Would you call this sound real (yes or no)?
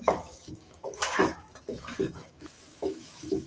no